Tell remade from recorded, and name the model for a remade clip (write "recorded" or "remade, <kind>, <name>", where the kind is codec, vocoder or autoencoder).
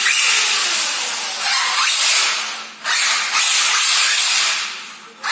recorded